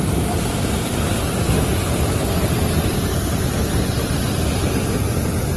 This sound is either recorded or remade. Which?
recorded